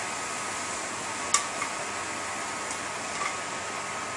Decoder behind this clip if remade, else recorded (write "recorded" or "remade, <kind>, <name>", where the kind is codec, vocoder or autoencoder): recorded